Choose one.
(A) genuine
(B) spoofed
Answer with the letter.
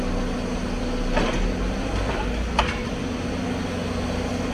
A